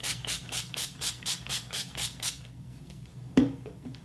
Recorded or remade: remade